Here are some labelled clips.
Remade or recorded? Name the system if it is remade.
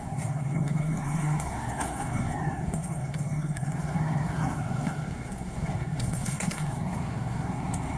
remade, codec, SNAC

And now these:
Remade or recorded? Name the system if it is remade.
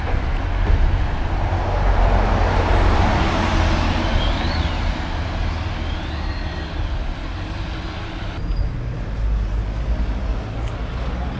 recorded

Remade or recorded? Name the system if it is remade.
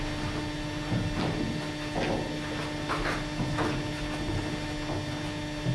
recorded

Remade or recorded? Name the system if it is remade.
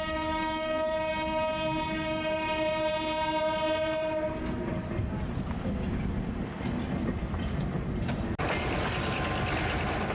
recorded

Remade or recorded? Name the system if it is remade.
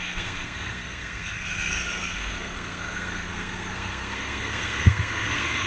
remade, codec, SNAC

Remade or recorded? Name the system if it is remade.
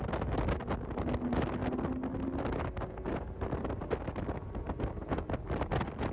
recorded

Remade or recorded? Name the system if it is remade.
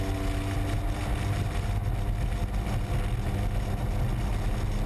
recorded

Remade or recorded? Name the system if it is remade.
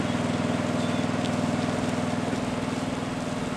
recorded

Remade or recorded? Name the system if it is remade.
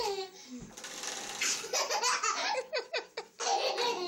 recorded